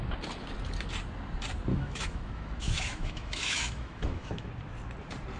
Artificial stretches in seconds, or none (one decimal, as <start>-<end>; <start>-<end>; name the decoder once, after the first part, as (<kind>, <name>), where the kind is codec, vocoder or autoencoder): 1.7-4.5 (autoencoder, DAC-VAE)